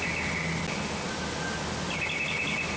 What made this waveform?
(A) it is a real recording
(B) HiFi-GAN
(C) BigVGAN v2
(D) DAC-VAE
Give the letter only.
A